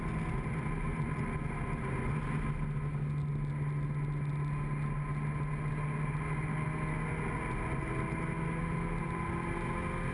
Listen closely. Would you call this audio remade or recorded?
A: recorded